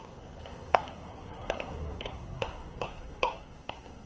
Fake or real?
fake